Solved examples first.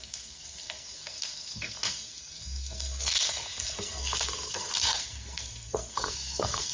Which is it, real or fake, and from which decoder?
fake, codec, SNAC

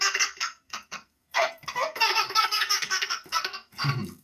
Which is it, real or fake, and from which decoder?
fake, codec, SNAC